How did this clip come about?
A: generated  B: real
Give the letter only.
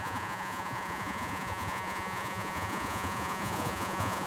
A